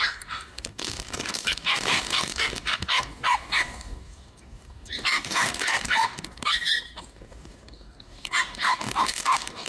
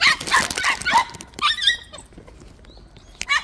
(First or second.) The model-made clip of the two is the first